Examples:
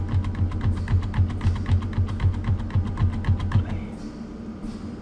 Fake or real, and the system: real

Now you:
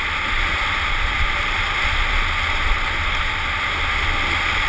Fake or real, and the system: real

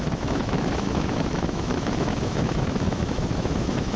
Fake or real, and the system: fake, autoencoder, DAC-VAE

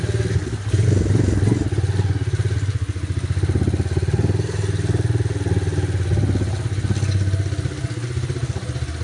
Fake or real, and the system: real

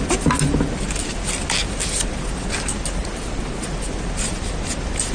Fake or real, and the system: real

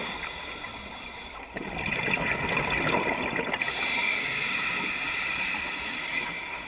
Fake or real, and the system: real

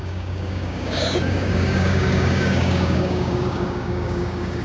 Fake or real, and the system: fake, codec, DAC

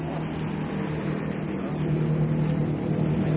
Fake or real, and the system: real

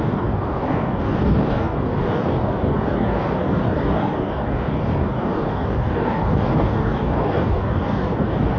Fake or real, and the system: fake, codec, DAC